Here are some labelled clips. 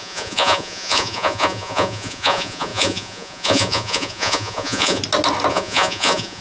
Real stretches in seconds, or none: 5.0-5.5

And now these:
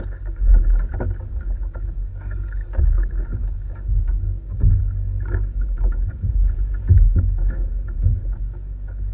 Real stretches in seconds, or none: 0.5-1.2; 6.4-6.9

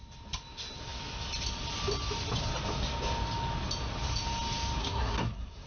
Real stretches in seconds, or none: 0.0-4.8

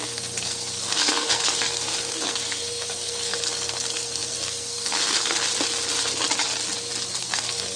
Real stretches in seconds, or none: 5.5-7.2

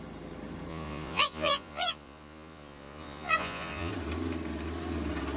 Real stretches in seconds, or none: 0.0-0.7; 3.9-5.4